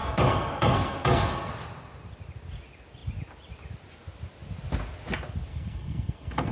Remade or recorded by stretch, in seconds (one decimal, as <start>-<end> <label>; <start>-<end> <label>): 0.0-1.5 remade; 1.5-5.5 recorded; 5.5-6.5 remade